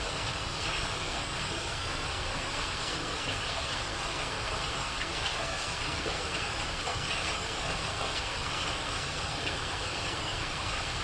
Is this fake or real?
fake